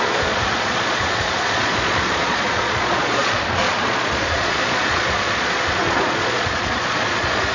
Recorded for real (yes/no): no